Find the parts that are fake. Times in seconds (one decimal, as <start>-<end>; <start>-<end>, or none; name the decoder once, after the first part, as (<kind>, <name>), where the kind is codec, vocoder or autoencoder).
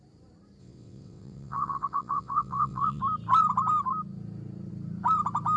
0.6-3.0 (vocoder, WaveNeXt)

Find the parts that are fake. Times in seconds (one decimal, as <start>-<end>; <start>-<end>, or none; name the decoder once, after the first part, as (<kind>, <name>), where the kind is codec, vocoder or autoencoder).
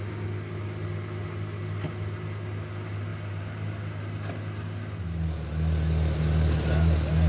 none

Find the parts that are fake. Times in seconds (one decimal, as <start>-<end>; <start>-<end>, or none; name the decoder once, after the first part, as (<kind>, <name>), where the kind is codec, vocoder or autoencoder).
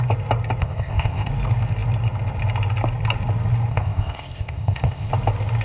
0.6-1.3 (codec, ZipCodec); 3.7-5.1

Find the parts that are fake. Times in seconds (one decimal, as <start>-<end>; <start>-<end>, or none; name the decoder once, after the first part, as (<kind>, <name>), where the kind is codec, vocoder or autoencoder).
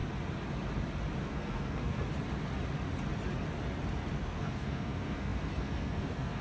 1.2-2.1 (codec, SNAC); 4.2-6.4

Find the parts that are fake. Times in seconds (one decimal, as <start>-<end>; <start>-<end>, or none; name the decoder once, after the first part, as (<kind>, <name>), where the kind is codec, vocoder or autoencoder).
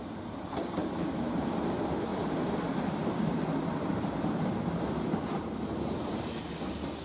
0.8-1.6 (vocoder, BigVGAN v2); 2.1-6.3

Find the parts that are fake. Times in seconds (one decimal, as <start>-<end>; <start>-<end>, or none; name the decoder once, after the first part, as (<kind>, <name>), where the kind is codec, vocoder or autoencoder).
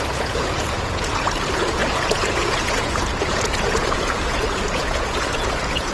0.0-5.9 (vocoder, Vocos)